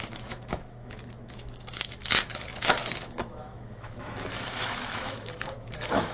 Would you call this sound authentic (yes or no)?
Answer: no